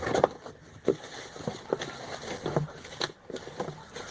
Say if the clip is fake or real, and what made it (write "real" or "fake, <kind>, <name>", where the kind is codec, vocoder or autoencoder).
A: real